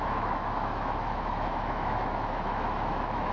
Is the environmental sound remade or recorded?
remade